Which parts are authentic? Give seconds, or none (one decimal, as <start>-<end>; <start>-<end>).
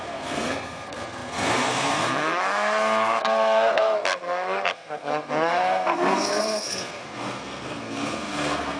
none